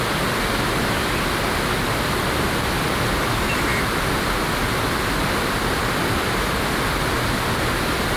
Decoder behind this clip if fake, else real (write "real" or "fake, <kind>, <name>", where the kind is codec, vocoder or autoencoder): real